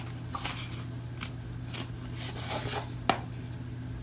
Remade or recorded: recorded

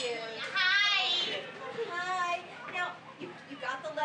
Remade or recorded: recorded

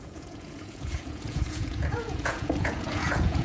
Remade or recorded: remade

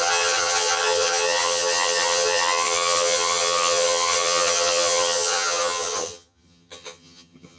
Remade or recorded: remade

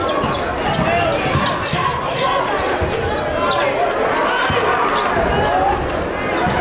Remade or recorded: recorded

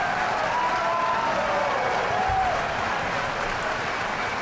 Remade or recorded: recorded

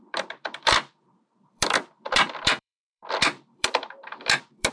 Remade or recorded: remade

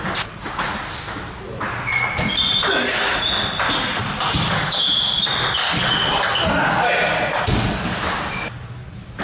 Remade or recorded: recorded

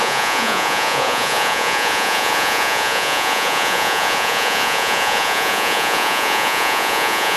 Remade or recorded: remade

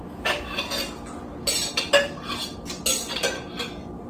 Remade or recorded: recorded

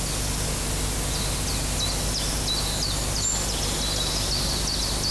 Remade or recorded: recorded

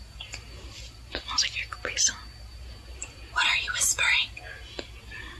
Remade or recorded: recorded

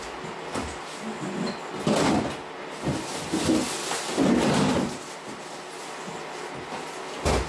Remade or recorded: recorded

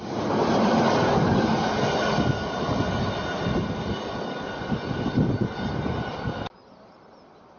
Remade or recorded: recorded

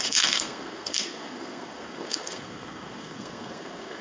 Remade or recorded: remade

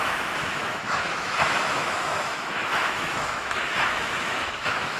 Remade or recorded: remade